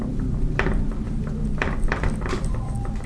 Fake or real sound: fake